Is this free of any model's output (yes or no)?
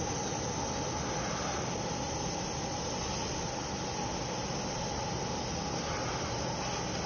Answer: yes